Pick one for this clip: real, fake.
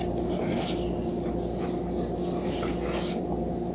real